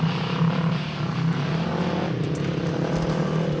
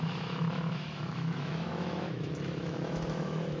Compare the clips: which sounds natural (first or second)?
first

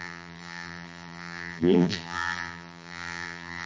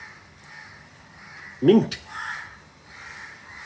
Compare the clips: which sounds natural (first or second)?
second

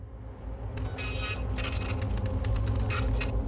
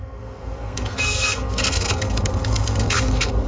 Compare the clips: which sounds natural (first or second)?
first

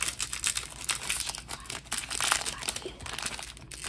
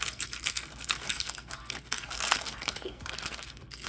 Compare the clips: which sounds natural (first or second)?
first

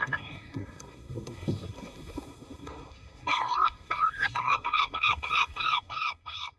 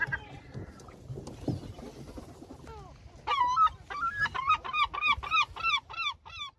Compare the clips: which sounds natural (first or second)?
second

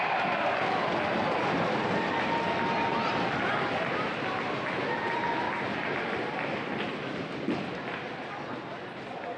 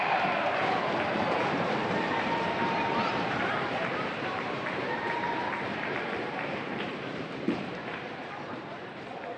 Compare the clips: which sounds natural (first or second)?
first